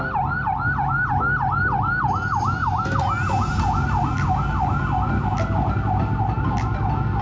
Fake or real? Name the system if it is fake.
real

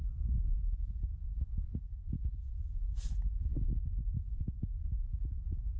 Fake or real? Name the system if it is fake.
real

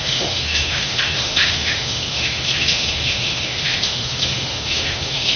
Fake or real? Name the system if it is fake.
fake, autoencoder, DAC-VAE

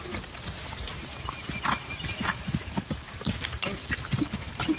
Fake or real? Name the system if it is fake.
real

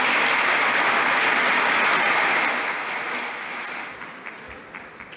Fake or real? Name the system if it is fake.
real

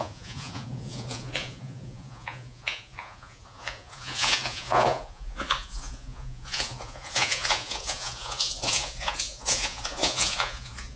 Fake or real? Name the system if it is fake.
fake, vocoder, Vocos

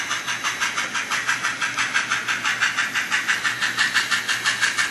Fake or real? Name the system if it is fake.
real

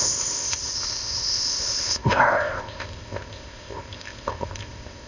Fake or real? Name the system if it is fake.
fake, codec, ZipCodec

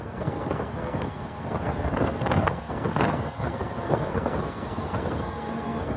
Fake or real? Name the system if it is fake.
fake, codec, SNAC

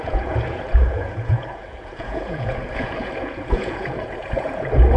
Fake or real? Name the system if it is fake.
fake, vocoder, Vocos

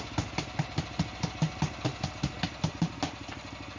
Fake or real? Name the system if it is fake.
real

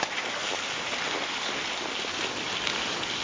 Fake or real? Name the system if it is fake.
real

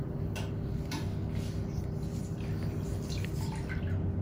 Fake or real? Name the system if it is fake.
real